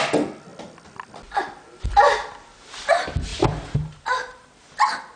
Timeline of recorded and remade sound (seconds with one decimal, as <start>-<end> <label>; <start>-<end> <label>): 0.0-3.3 recorded; 3.3-4.5 remade; 4.5-5.2 recorded